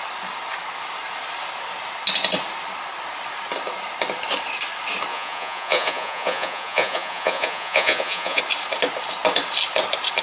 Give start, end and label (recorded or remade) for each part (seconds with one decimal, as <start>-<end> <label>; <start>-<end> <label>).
0.0-5.1 recorded; 5.1-8.4 remade; 8.4-10.2 recorded